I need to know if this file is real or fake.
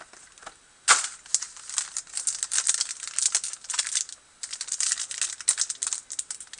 real